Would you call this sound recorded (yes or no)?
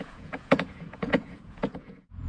no